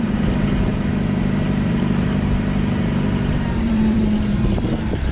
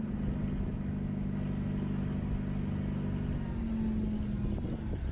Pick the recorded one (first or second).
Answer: second